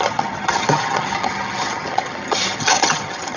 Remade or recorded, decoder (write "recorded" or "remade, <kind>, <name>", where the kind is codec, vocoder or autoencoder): remade, vocoder, HiFi-GAN